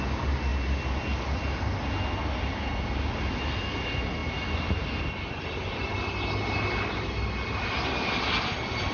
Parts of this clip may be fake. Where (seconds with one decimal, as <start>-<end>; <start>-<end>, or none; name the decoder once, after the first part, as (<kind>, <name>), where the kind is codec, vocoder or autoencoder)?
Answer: none